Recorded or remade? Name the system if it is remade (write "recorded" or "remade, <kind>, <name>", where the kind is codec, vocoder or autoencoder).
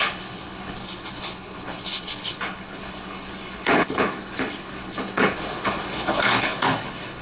remade, codec, HILCodec